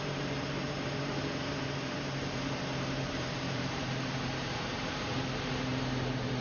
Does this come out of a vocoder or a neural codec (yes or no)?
yes